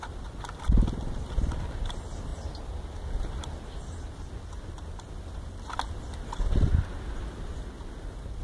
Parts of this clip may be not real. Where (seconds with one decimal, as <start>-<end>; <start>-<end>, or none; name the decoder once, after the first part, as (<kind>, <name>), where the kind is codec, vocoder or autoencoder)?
none